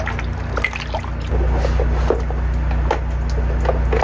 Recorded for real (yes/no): yes